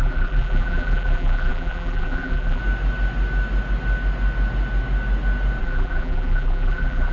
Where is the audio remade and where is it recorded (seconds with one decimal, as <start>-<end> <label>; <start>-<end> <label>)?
0.0-2.6 remade; 2.6-5.6 recorded; 5.6-7.1 remade